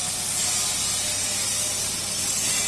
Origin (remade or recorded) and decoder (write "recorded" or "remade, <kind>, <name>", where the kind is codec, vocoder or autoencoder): recorded